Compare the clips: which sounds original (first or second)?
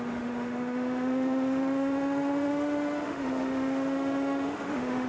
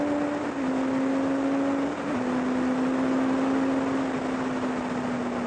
second